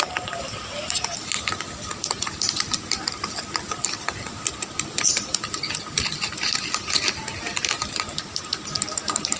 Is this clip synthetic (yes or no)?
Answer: no